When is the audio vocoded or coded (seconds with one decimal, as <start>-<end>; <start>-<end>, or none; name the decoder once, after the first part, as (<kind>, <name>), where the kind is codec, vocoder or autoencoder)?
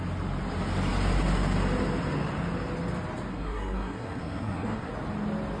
3.3-4.9 (codec, SNAC)